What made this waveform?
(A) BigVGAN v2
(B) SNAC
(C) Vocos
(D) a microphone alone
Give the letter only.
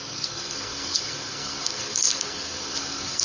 B